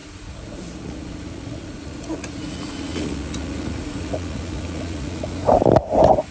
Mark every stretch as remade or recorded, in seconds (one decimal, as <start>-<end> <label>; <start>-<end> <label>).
0.0-5.4 remade; 5.4-6.3 recorded